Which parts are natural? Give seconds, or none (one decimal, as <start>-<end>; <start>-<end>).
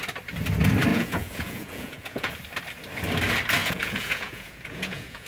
0.0-0.9; 2.3-3.6